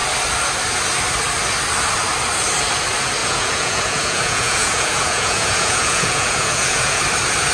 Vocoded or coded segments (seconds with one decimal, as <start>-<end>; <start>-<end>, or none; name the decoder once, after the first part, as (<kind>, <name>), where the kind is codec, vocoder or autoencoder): 3.2-7.0 (vocoder, Vocos)